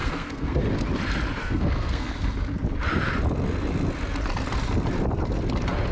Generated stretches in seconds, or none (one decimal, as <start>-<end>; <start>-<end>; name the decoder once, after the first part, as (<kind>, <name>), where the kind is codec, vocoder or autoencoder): 0.0-0.6 (codec, SNAC); 1.4-2.1